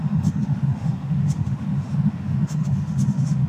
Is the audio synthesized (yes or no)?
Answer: yes